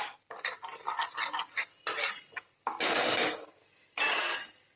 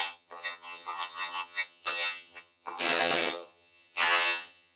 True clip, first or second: first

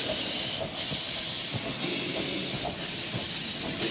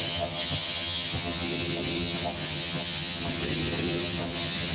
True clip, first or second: first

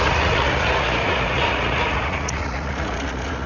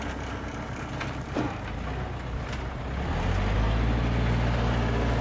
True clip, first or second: second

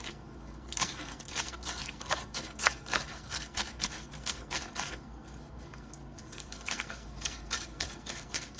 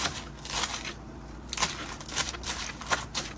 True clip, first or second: second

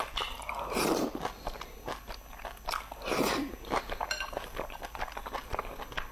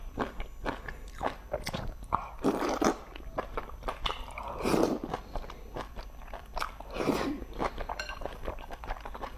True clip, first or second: first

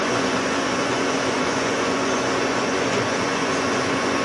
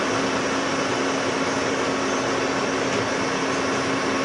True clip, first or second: second